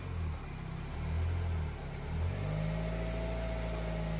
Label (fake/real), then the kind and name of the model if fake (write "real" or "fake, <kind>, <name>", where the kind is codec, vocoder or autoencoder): real